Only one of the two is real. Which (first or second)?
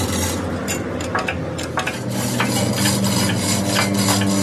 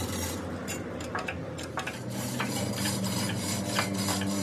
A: first